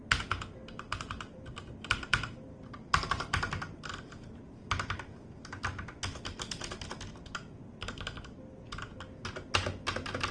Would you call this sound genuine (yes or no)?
yes